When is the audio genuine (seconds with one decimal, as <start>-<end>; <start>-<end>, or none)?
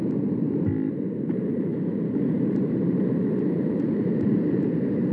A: none